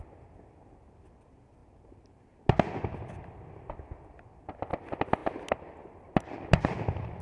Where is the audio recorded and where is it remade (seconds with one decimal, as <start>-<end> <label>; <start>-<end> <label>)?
0.0-7.2 recorded